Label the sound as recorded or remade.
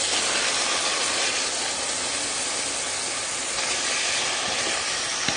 recorded